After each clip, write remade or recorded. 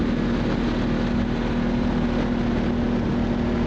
recorded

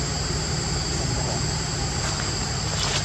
remade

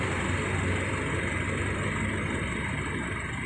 recorded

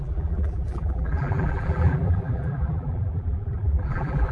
remade